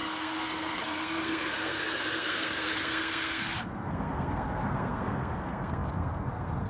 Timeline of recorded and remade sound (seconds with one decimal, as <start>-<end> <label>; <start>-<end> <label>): 0.0-6.7 remade